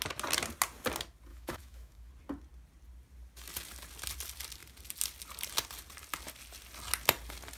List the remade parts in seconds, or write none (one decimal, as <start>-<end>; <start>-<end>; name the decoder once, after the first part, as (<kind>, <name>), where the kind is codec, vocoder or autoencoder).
1.3-2.1 (autoencoder, DAC-VAE)